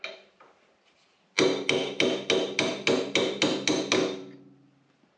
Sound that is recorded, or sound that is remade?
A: recorded